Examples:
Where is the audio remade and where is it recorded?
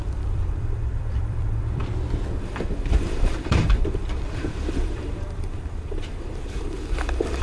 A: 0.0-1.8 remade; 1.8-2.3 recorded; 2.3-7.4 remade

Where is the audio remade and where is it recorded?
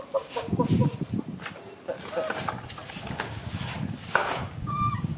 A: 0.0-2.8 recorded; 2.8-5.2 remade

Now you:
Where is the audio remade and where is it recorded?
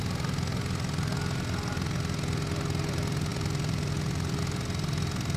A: 0.0-3.3 recorded; 3.3-4.4 remade; 4.4-5.4 recorded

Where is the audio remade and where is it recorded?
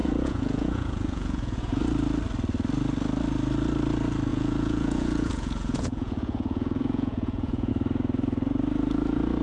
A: 0.0-1.8 remade; 1.8-4.3 recorded; 4.3-7.7 remade; 7.7-9.4 recorded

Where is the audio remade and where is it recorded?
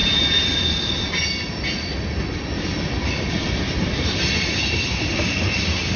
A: 0.0-6.0 recorded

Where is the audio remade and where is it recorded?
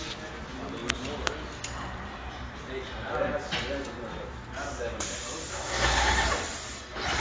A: 0.0-5.5 recorded; 5.5-6.1 remade; 6.1-7.2 recorded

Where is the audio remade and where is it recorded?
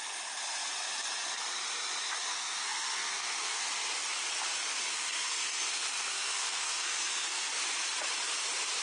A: 0.0-2.3 recorded; 2.3-3.6 remade; 3.6-4.9 recorded; 4.9-7.5 remade; 7.5-8.8 recorded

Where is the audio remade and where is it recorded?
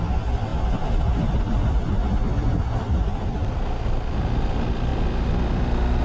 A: 0.0-6.0 recorded